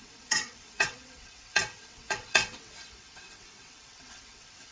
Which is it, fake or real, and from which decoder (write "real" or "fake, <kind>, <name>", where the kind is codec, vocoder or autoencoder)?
fake, vocoder, WaveNeXt